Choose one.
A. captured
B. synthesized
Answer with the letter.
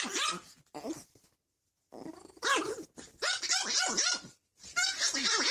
A